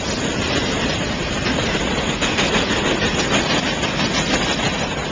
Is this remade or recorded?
recorded